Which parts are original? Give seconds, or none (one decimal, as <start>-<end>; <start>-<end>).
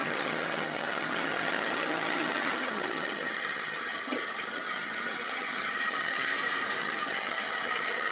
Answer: 6.3-6.8